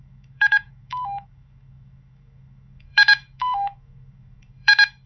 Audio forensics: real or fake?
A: fake